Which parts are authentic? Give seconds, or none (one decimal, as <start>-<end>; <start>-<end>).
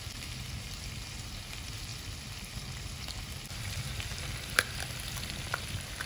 none